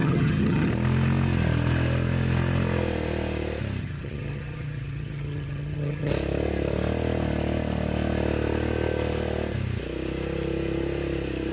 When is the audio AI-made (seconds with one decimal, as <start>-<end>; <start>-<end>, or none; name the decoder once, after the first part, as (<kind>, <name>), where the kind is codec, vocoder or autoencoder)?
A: 0.0-0.7 (vocoder, HiFi-GAN); 3.8-6.1